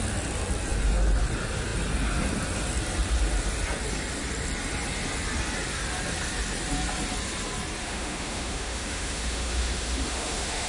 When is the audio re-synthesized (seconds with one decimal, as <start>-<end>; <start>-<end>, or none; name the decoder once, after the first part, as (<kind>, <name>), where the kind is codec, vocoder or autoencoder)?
7.8-10.7 (autoencoder, DAC-VAE)